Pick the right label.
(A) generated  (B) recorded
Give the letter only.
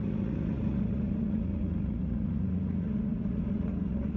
A